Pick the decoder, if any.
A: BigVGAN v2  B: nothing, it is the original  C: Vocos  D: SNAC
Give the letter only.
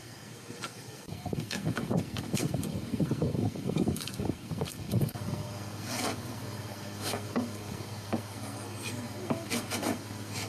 D